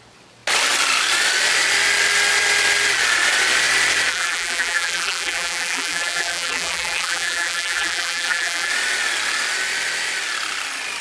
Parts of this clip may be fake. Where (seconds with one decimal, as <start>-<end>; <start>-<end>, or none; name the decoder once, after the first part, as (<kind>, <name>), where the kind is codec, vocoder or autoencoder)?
4.1-8.7 (vocoder, BigVGAN v2)